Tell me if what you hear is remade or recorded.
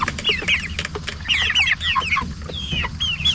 recorded